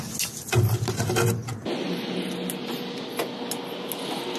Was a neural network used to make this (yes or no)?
no